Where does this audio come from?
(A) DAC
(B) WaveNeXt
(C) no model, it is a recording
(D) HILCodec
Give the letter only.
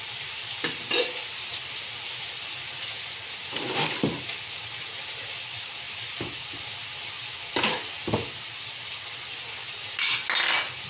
C